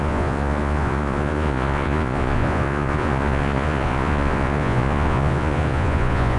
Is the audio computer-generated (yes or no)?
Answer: yes